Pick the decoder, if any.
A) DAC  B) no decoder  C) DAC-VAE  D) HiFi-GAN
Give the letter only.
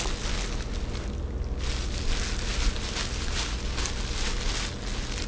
B